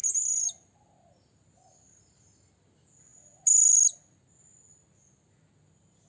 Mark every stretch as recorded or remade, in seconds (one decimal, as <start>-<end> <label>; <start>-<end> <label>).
0.0-6.1 recorded